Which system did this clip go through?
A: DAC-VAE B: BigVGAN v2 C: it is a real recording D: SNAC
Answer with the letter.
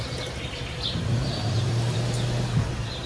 B